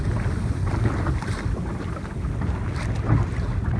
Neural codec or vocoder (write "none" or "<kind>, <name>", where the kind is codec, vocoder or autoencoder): none